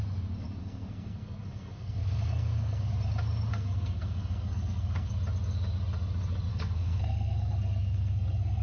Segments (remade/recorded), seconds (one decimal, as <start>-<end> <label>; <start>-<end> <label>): 0.0-0.6 recorded; 0.6-2.9 remade; 2.9-3.5 recorded; 3.5-5.1 remade; 5.1-6.5 recorded; 6.5-8.6 remade

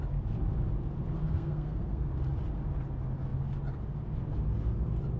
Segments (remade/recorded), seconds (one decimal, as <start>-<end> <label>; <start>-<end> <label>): 0.0-1.2 recorded; 1.2-2.1 remade; 2.1-5.2 recorded

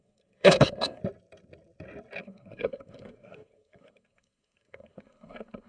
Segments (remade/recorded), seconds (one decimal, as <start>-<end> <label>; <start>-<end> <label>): 0.0-1.0 remade; 1.0-2.2 recorded; 2.2-5.7 remade

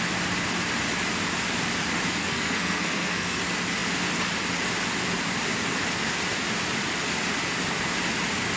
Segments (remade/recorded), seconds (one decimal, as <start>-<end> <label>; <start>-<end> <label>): 0.0-2.2 recorded; 2.2-3.4 remade; 3.4-8.6 recorded

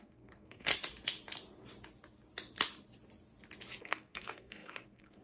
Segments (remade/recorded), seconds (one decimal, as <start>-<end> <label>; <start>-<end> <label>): 0.0-0.7 remade; 0.7-3.8 recorded; 3.8-5.2 remade

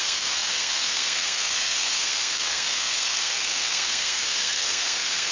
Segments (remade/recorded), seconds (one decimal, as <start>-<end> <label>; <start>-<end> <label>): 0.0-5.3 remade